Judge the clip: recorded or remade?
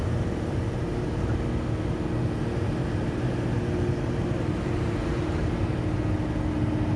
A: recorded